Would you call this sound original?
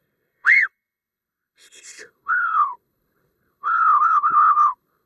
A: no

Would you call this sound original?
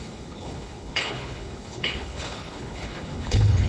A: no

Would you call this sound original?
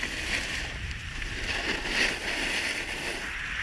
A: yes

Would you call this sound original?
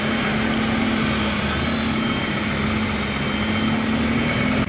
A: yes